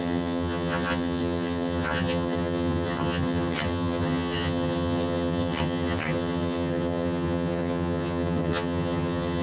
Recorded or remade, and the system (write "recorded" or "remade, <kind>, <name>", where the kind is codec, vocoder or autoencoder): remade, vocoder, HiFi-GAN